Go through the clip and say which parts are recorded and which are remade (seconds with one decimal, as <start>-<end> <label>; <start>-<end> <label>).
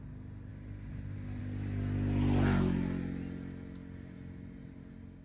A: 0.0-5.2 recorded